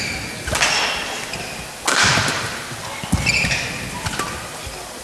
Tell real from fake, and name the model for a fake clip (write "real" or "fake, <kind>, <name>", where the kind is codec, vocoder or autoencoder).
real